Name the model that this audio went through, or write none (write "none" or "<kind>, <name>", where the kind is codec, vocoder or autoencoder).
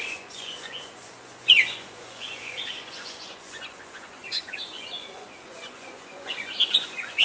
vocoder, Vocos